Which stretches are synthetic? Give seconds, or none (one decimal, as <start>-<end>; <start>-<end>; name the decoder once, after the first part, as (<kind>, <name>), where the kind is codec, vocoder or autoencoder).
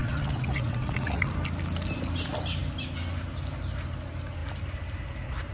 0.0-1.3 (vocoder, WaveNeXt)